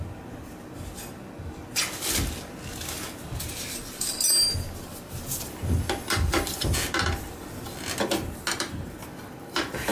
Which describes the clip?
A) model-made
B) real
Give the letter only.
B